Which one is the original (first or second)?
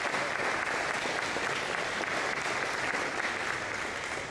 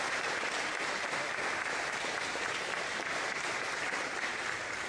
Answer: first